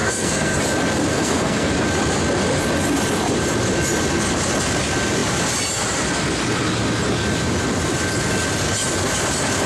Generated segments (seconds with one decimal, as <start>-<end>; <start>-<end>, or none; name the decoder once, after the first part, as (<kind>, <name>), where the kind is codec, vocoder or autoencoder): 0.0-0.6 (codec, SNAC); 1.1-1.7